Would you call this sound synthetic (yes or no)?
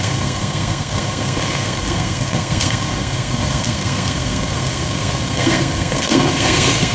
yes